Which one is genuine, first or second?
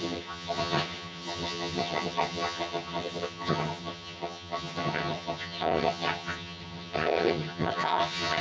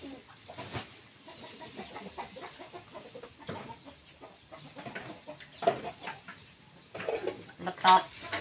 second